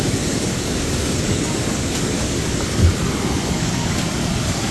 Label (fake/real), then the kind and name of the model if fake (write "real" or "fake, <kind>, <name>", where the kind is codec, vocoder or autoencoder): fake, codec, DAC